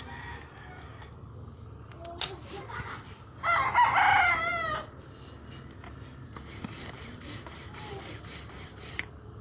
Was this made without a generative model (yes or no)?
yes